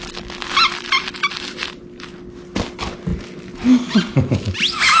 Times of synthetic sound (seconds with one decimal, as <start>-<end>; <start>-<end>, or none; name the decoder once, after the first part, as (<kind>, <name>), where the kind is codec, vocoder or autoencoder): 0.7-1.8 (vocoder, BigVGAN v2)